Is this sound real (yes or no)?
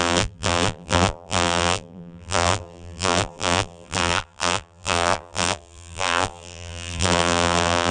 no